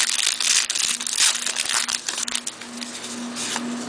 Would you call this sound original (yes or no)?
yes